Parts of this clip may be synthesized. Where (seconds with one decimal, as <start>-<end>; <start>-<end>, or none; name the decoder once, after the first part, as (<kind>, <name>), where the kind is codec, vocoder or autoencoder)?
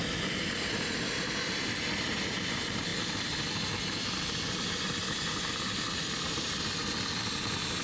none